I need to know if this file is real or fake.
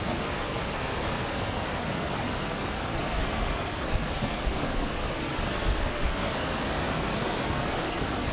fake